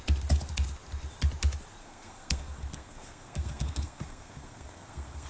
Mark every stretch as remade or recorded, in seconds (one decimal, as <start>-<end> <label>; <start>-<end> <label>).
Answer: 0.0-1.8 recorded; 1.8-5.3 remade